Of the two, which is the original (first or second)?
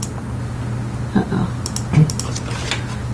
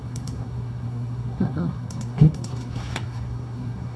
first